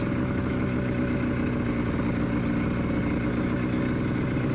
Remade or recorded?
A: recorded